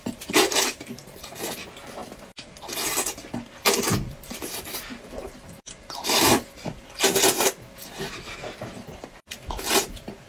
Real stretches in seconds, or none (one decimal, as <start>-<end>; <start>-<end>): 2.0-3.5